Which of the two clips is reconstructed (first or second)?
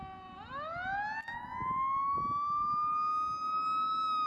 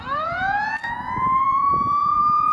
second